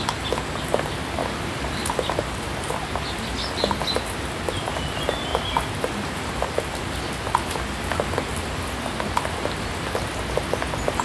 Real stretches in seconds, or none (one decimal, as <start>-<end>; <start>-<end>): 0.0-1.2; 1.9-11.0